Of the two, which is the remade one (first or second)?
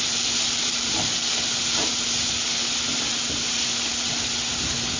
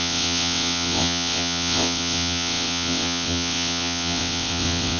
second